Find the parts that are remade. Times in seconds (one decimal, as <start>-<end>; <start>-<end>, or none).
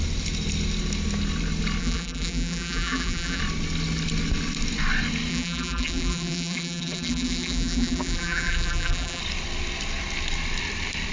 1.8-3.4; 5.3-9.2